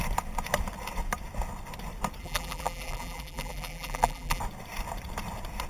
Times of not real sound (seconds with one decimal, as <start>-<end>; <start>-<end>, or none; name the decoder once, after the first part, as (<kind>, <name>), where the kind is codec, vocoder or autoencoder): 2.2-4.4 (vocoder, BigVGAN v2)